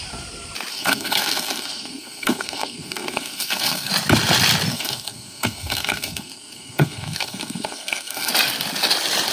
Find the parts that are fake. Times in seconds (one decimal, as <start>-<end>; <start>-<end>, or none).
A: 0.7-3.9; 4.7-8.3